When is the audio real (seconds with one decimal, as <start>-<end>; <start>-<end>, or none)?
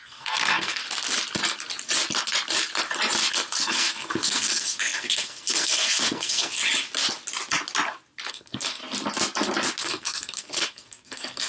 0.8-3.3; 6.6-8.3; 8.8-9.8